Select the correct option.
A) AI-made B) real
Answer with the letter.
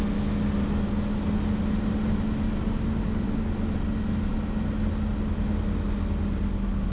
B